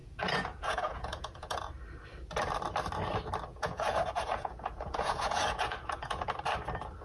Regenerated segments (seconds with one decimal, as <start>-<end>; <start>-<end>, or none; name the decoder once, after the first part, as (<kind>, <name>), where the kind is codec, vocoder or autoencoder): 0.0-1.7 (vocoder, Vocos); 3.5-6.3